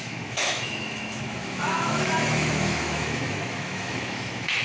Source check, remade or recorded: remade